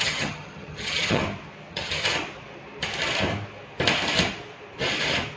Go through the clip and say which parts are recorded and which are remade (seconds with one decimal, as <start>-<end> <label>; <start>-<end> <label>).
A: 0.0-1.2 remade; 1.2-1.7 recorded; 1.7-2.1 remade; 2.1-5.4 recorded